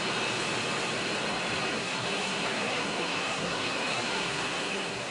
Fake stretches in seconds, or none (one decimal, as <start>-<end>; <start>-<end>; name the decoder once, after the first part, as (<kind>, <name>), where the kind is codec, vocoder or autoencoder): 1.7-5.1 (codec, SNAC)